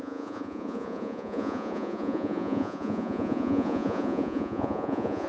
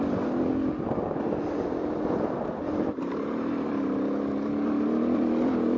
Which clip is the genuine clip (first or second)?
second